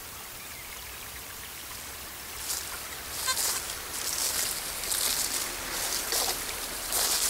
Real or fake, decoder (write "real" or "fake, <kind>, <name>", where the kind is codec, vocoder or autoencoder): real